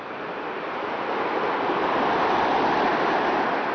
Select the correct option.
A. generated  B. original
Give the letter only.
A